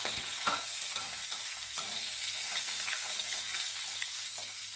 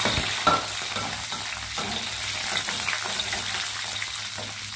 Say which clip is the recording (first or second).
second